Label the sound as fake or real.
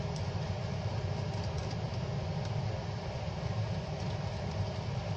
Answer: real